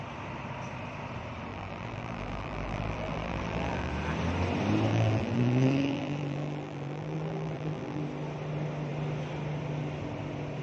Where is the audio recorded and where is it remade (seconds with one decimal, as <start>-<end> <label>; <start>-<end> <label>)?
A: 0.0-1.5 recorded; 1.5-3.9 remade; 3.9-4.9 recorded; 4.9-8.0 remade; 8.0-10.6 recorded